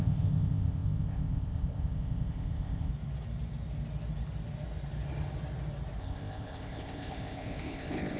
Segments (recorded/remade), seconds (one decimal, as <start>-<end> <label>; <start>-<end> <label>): 0.0-2.9 remade; 2.9-6.0 recorded; 6.0-8.2 remade